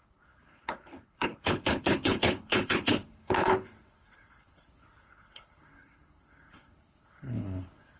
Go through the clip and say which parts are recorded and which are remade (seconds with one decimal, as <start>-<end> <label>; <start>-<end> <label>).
0.0-8.0 remade